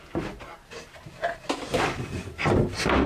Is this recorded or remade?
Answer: recorded